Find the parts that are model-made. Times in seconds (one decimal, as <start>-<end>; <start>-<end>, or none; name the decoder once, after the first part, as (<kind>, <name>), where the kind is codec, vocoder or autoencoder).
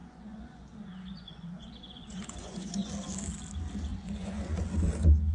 0.0-2.9 (vocoder, Vocos); 3.9-4.6